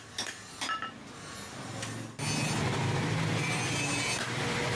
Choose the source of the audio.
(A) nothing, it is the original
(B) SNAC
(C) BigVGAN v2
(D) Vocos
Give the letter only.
A